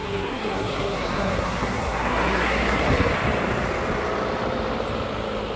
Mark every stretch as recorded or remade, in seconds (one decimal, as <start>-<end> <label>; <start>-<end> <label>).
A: 0.0-3.1 remade; 3.1-5.6 recorded